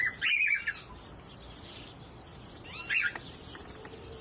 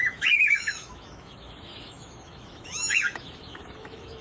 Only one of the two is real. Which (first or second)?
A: first